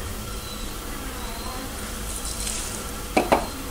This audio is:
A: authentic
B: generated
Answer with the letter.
B